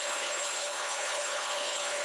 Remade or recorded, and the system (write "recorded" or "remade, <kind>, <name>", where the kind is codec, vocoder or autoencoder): remade, codec, HILCodec